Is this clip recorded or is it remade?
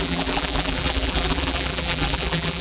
remade